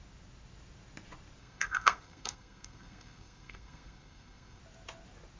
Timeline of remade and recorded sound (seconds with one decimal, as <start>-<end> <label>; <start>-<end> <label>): 0.0-1.4 recorded; 1.4-4.6 remade; 4.6-5.4 recorded